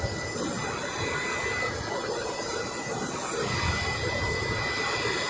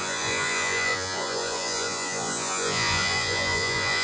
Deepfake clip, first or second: second